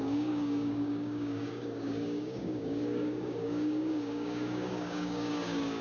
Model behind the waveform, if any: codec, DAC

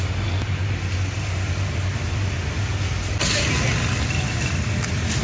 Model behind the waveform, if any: none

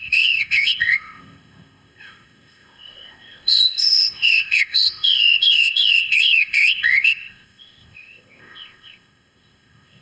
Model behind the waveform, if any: codec, ZipCodec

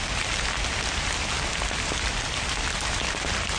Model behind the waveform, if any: none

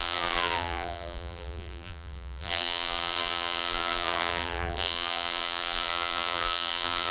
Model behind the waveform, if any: vocoder, BigVGAN v2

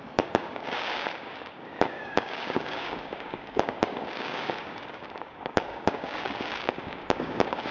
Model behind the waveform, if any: codec, DAC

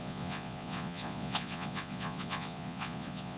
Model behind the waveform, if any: vocoder, Vocos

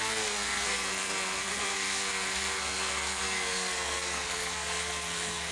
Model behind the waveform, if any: codec, SNAC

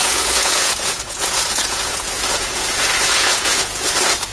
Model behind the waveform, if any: vocoder, Vocos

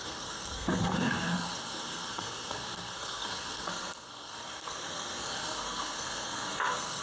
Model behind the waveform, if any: codec, SNAC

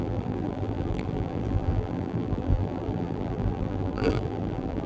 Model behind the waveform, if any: vocoder, BigVGAN v2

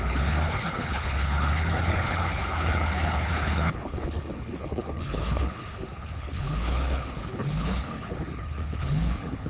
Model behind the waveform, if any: codec, HILCodec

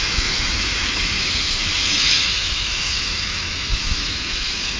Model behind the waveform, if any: autoencoder, DAC-VAE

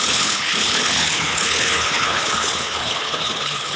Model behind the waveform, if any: codec, HILCodec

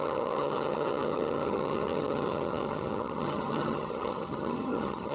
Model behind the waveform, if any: vocoder, HiFi-GAN